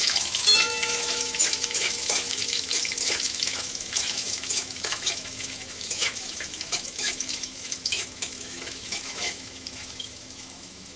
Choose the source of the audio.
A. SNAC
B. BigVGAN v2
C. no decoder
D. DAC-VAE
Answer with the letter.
D